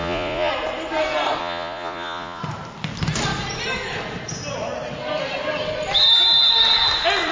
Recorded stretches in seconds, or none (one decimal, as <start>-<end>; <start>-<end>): 0.5-1.4; 2.4-7.3